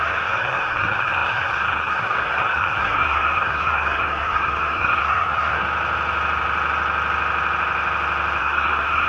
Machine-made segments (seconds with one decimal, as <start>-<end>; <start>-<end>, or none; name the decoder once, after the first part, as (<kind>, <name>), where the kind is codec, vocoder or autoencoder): 0.0-5.6 (codec, SNAC); 8.4-9.1